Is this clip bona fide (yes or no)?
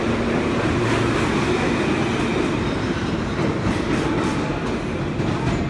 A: yes